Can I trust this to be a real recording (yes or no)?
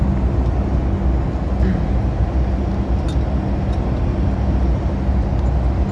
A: yes